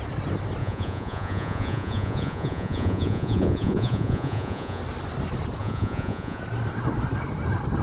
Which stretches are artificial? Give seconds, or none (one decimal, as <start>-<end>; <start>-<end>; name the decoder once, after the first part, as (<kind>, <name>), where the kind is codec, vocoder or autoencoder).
0.6-4.8 (vocoder, Vocos); 5.6-6.4